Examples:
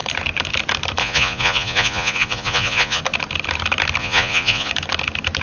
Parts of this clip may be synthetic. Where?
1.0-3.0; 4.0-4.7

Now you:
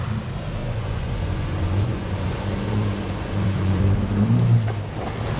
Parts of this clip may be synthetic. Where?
0.6-3.8

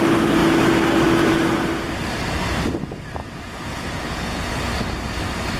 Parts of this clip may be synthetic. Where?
3.2-4.5

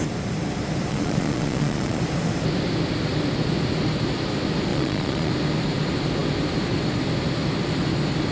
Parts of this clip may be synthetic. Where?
0.9-2.0; 4.7-5.3

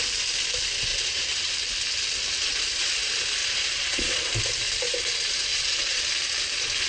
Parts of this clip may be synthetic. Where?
0.9-1.5; 3.4-4.3; 5.5-6.0

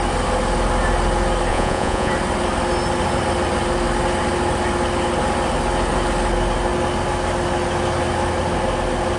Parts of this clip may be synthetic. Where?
1.5-2.1

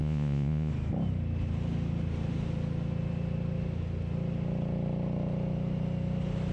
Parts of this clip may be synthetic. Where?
0.0-0.7